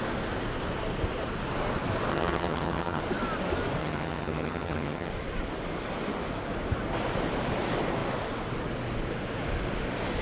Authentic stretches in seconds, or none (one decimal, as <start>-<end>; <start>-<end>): 0.0-2.1; 3.0-3.8; 5.1-10.2